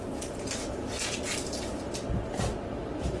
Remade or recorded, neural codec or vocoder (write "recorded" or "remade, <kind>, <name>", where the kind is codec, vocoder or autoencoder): recorded